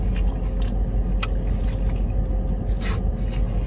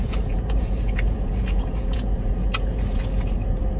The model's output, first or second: second